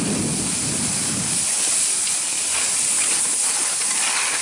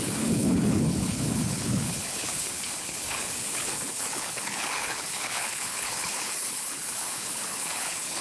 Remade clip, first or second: second